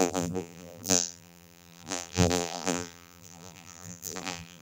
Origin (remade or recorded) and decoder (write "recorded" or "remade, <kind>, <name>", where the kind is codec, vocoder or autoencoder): remade, vocoder, BigVGAN v2